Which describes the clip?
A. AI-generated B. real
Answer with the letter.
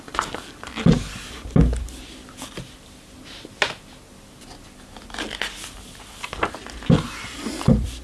B